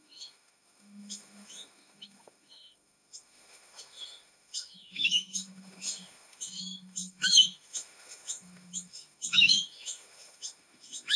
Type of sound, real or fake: fake